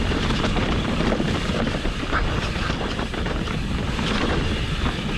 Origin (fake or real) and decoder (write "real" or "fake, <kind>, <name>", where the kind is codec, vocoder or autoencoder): fake, vocoder, BigVGAN v2